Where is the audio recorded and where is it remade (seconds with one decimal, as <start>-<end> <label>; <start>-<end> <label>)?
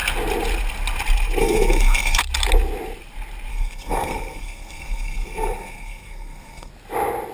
0.0-1.4 recorded; 1.4-2.2 remade; 2.2-3.5 recorded; 3.5-6.7 remade; 6.7-7.3 recorded